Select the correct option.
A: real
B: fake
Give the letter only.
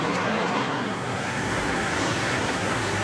B